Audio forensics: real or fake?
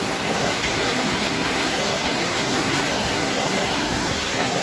fake